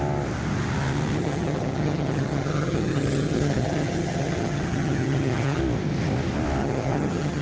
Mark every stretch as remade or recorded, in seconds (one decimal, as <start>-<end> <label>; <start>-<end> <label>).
0.0-1.2 recorded; 1.2-5.6 remade; 5.6-6.6 recorded; 6.6-7.4 remade